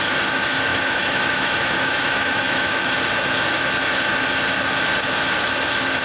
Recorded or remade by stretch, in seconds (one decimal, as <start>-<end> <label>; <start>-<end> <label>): 0.0-0.7 recorded; 0.7-2.9 remade; 2.9-6.0 recorded